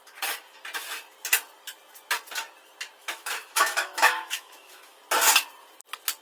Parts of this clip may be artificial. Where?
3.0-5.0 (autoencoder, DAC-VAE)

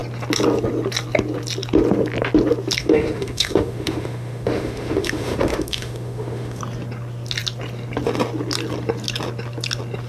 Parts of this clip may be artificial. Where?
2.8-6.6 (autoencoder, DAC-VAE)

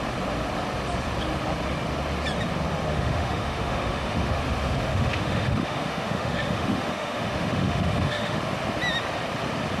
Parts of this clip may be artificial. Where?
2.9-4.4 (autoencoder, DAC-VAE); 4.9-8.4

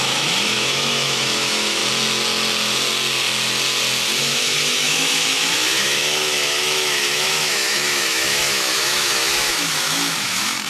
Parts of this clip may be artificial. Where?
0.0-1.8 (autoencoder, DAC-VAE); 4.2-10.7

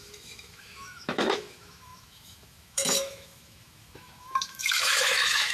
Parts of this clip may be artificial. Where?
0.0-5.5 (autoencoder, DAC-VAE)

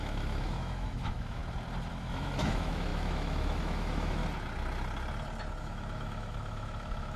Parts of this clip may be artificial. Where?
0.0-1.4 (autoencoder, DAC-VAE); 1.9-4.2; 5.6-7.2

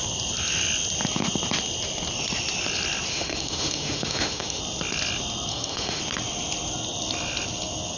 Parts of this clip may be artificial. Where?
3.1-4.6 (autoencoder, DAC-VAE); 5.5-6.0